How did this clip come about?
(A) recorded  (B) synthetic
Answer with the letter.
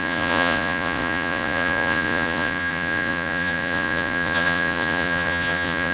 B